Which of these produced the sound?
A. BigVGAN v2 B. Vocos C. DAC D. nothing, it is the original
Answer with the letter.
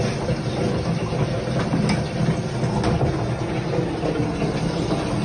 D